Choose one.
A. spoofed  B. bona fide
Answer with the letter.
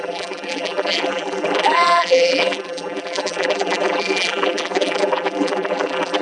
A